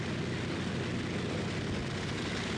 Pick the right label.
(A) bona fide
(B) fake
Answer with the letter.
A